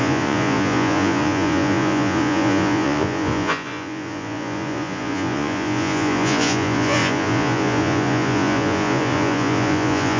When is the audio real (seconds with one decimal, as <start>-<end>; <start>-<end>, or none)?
none